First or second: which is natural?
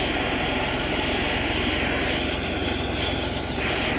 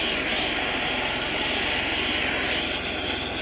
second